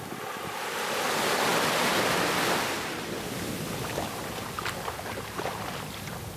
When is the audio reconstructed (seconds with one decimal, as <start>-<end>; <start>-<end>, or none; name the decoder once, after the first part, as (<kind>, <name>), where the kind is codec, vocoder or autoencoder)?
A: none